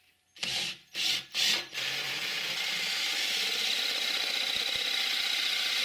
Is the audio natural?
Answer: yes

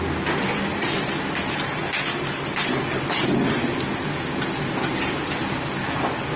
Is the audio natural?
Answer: yes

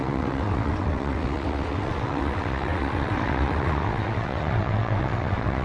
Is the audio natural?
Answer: no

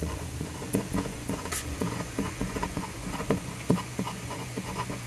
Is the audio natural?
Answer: no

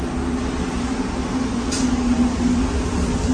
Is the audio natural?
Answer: yes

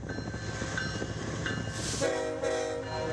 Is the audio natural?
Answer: yes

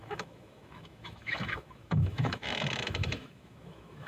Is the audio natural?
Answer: no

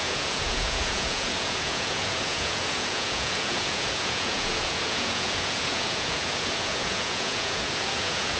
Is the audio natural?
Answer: no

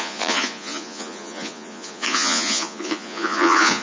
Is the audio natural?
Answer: no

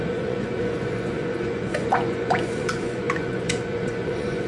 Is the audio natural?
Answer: no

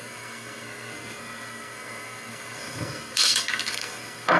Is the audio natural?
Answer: no